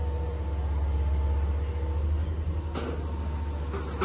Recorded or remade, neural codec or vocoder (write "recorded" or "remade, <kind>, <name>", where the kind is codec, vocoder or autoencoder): recorded